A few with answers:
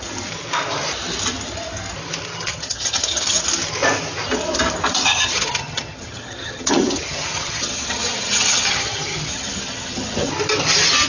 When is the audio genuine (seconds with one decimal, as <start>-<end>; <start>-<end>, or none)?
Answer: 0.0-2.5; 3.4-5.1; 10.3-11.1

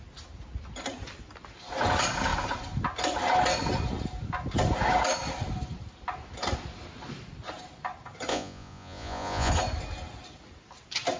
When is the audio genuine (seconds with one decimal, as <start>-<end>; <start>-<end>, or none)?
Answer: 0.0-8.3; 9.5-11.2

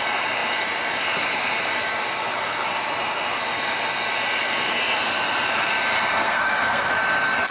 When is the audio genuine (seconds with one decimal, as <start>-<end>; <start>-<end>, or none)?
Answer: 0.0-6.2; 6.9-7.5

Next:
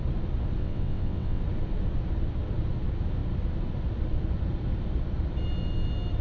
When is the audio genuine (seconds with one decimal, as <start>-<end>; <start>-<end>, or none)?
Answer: 0.0-0.6; 1.4-6.2